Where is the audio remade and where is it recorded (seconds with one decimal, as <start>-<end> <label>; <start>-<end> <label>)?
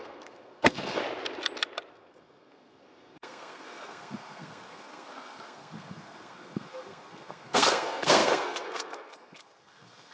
0.0-1.0 remade; 1.0-1.9 recorded; 1.9-10.1 remade